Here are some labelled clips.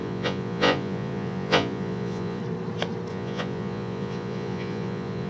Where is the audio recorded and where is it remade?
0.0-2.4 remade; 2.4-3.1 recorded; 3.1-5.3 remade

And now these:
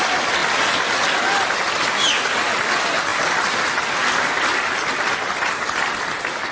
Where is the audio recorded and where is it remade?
0.0-6.5 recorded

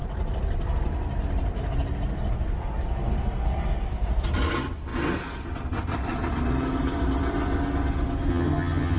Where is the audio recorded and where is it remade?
0.0-8.3 recorded; 8.3-9.0 remade